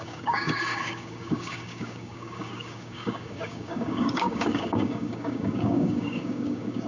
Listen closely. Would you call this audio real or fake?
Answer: fake